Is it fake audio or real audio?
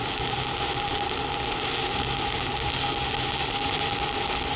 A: real